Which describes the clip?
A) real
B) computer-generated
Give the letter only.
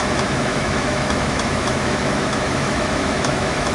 B